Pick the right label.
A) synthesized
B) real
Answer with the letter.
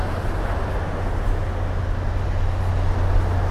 B